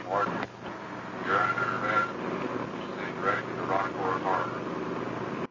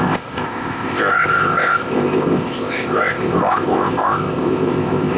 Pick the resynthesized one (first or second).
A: second